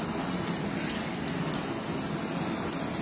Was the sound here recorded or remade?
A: recorded